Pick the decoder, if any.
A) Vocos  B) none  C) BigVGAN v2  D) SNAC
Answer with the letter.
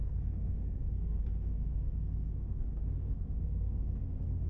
D